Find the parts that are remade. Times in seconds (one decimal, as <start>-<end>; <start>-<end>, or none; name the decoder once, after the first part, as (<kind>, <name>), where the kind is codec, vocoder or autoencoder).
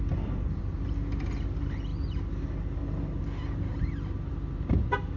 none